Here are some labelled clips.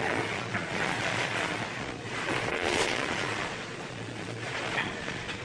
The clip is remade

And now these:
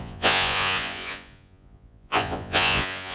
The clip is remade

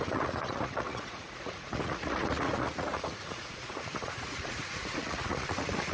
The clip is remade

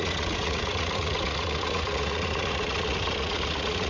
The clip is remade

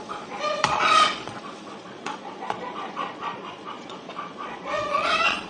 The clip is remade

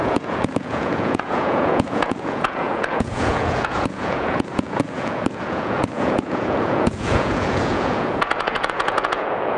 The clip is remade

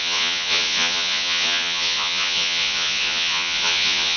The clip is remade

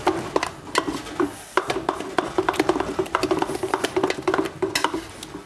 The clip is recorded